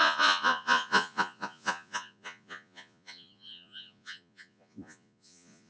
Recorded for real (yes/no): no